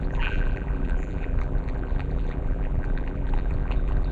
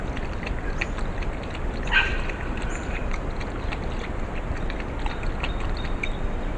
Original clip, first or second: second